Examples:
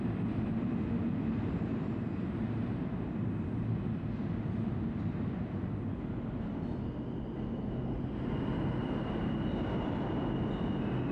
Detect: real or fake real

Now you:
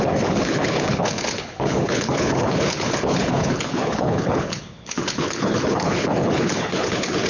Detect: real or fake fake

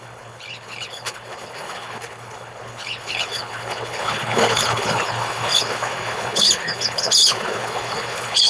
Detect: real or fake fake